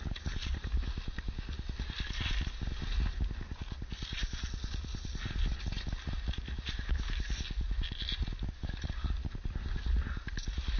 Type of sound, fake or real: real